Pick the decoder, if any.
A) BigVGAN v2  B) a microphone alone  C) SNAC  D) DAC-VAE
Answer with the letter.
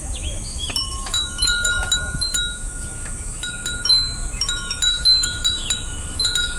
D